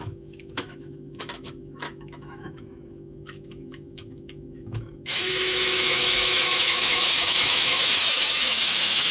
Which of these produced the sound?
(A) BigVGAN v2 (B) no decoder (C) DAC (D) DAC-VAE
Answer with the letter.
D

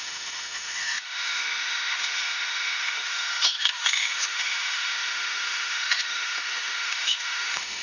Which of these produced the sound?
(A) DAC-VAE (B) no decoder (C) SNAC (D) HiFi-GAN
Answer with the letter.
A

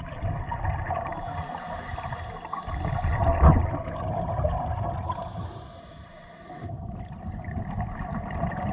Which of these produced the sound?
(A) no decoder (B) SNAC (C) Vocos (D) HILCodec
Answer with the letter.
A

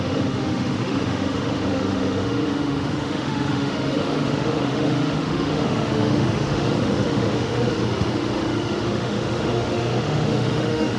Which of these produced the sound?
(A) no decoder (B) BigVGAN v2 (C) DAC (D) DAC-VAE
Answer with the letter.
D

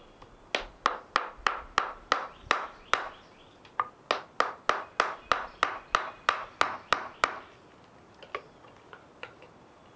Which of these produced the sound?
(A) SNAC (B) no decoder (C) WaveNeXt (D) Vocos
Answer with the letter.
B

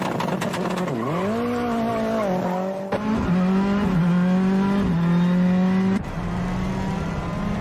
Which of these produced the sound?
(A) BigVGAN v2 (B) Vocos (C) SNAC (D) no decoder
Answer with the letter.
D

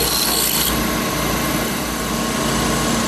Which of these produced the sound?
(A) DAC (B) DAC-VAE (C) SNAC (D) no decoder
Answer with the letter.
D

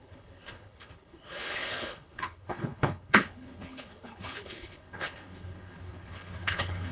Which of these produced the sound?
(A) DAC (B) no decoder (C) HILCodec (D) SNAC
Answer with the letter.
C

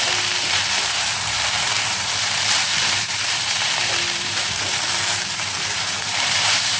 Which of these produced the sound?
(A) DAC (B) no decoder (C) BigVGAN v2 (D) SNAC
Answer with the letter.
C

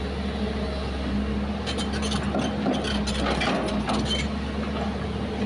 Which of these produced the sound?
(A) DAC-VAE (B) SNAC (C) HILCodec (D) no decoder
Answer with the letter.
D